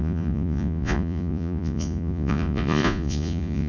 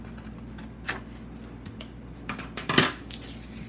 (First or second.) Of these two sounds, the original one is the second